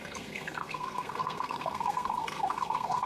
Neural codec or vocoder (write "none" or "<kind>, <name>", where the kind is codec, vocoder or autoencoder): codec, SNAC